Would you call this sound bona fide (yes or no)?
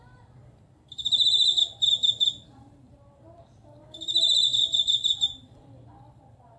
no